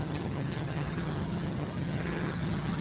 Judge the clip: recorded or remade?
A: remade